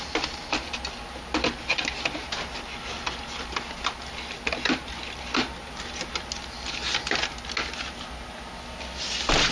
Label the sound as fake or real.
real